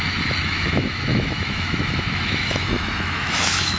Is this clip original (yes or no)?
no